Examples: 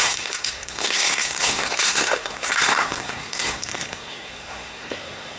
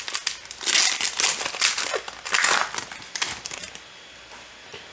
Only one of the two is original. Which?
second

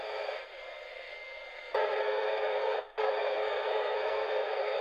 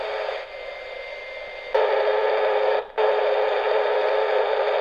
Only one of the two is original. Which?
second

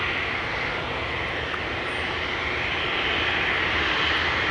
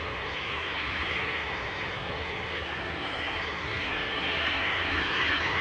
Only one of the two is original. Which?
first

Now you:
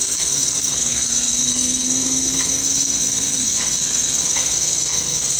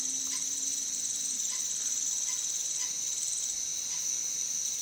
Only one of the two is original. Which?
second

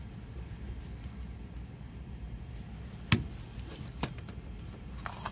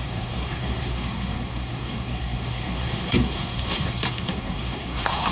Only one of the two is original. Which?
first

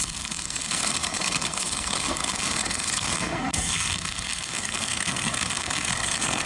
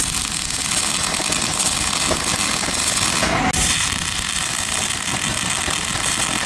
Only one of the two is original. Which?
second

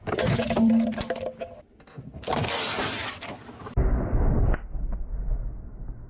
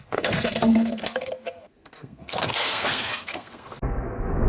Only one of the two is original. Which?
first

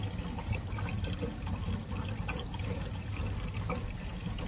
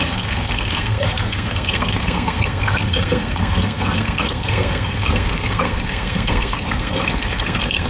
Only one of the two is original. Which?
first